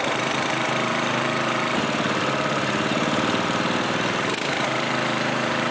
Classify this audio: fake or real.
fake